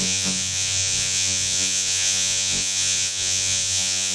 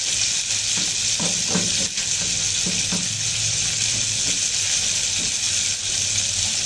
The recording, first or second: second